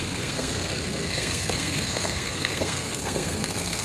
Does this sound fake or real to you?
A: fake